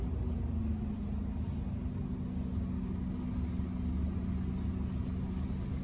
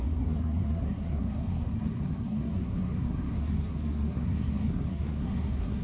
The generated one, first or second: second